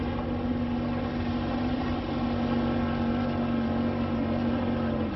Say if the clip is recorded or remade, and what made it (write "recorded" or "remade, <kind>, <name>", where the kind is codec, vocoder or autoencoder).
recorded